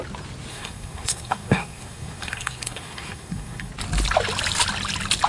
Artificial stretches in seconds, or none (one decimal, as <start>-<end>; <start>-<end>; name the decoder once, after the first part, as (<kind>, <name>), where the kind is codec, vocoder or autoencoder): 0.5-3.7 (codec, SNAC)

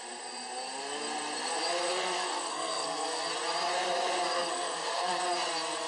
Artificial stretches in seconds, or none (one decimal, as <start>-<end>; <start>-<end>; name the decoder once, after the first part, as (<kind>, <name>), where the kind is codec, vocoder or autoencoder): 1.9-3.2 (codec, SNAC); 4.4-5.2

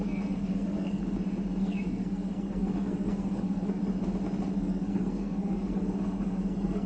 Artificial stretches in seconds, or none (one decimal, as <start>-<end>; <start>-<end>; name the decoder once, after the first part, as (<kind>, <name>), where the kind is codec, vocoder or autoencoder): 0.0-1.0 (codec, SNAC); 1.6-3.8; 4.5-6.9

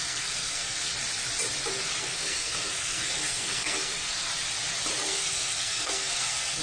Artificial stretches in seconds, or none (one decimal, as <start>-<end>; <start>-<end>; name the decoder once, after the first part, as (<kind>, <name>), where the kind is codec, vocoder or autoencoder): 0.0-0.9 (codec, SNAC); 2.0-4.3; 5.0-6.6